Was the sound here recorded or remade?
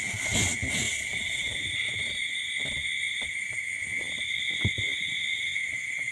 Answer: recorded